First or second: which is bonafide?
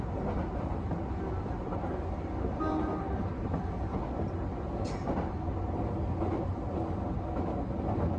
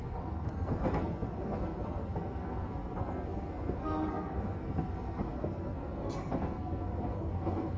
first